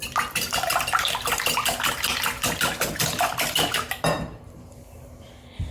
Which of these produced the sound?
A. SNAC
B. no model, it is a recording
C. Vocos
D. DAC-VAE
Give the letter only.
B